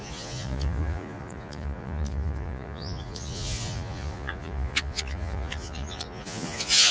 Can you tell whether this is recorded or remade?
remade